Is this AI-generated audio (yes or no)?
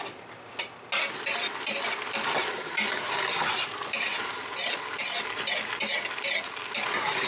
no